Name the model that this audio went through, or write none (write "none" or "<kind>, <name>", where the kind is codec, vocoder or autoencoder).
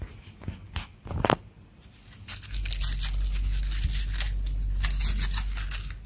none